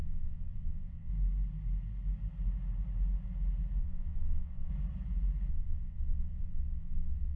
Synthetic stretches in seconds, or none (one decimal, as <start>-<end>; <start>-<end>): 0.0-1.1; 3.8-4.7; 5.5-7.4